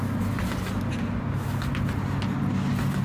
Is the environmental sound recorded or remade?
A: recorded